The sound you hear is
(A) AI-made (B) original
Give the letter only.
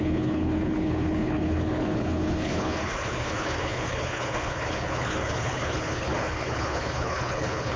A